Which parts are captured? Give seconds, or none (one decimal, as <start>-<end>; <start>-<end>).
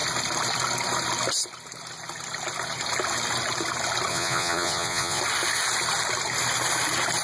0.0-4.1; 5.2-7.2